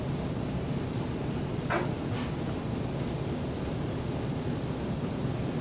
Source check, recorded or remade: recorded